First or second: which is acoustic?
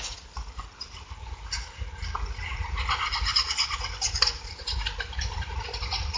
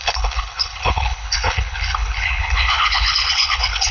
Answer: first